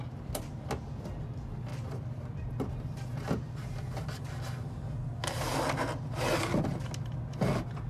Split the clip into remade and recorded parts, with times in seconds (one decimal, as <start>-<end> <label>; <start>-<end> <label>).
0.0-7.9 recorded